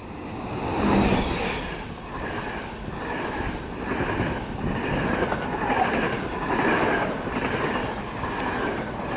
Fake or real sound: real